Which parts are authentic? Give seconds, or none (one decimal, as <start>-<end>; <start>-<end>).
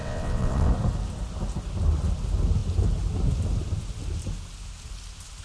0.7-5.4